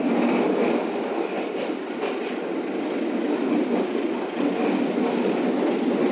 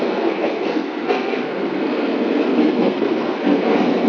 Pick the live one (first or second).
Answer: first